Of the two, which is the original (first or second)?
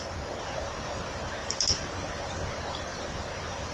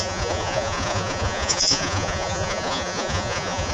first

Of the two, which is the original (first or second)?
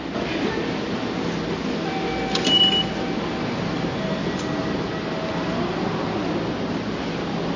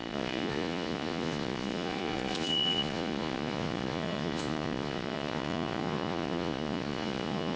first